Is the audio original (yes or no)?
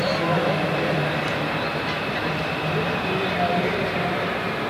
yes